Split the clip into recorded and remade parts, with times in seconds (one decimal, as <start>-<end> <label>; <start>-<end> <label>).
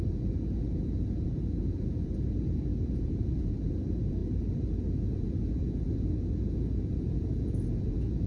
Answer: 0.0-4.2 remade; 4.2-4.9 recorded; 4.9-8.3 remade